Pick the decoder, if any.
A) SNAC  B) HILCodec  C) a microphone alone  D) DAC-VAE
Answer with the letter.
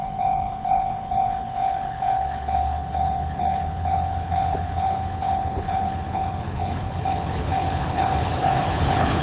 B